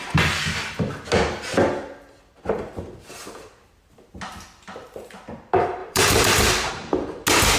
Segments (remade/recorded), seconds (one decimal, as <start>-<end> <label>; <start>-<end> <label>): 0.0-5.8 recorded; 5.8-6.7 remade; 6.7-7.6 recorded